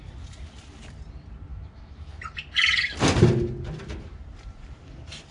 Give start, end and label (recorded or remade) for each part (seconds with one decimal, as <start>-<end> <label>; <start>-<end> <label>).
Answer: 0.0-1.5 recorded; 1.5-2.1 remade; 2.1-5.3 recorded